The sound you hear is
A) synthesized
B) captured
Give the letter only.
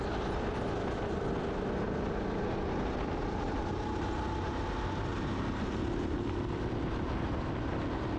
B